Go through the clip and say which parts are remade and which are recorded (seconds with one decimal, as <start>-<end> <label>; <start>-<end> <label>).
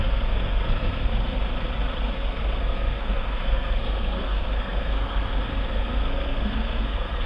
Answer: 0.0-1.4 remade; 1.4-2.0 recorded; 2.0-7.3 remade